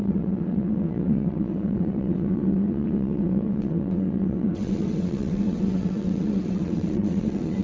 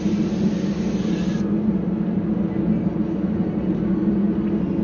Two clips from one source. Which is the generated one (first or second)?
first